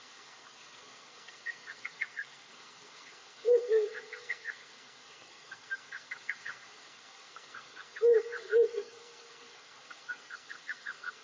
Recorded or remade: remade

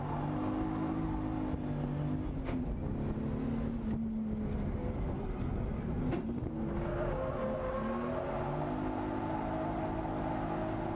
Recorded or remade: recorded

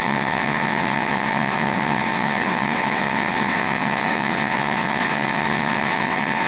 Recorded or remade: remade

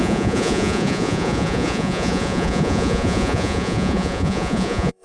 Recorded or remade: remade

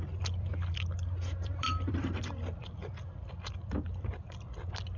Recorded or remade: remade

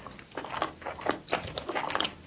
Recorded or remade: recorded